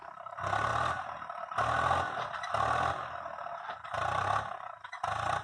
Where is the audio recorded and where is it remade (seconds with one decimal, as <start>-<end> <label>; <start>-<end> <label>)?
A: 0.0-5.4 recorded